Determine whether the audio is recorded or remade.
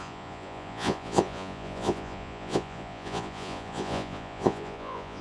remade